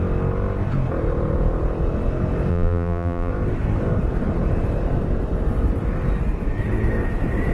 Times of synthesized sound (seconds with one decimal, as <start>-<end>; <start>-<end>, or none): 2.5-3.3